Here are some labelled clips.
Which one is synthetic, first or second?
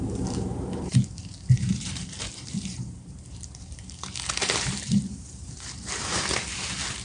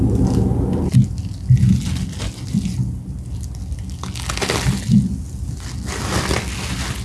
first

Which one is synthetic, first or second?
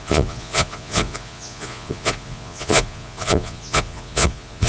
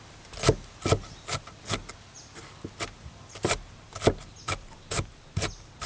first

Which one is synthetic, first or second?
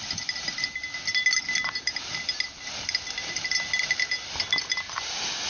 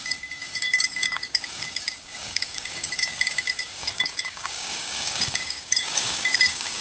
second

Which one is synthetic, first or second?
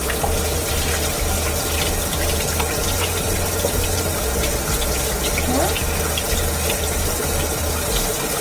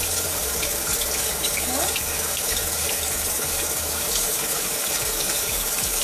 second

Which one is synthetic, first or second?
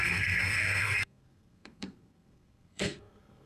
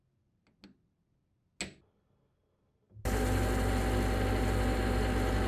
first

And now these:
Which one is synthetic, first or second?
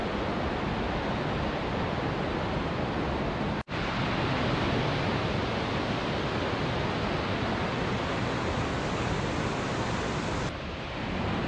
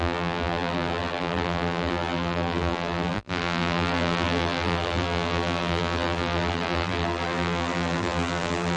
second